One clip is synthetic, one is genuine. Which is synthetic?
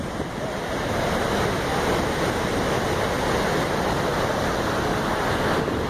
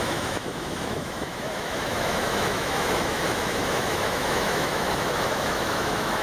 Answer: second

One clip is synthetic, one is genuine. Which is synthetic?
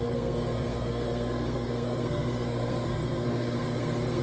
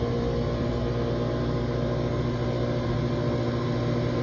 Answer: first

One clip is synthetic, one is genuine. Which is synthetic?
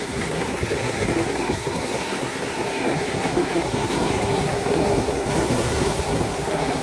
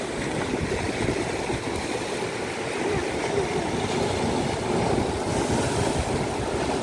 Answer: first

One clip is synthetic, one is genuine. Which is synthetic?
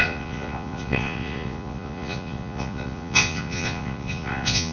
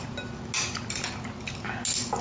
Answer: first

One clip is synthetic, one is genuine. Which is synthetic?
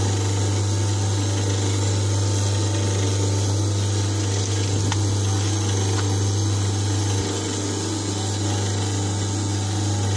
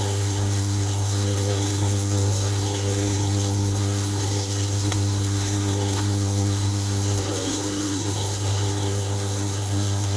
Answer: second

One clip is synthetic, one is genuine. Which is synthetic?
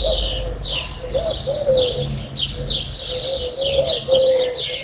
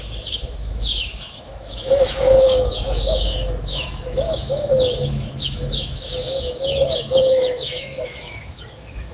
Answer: second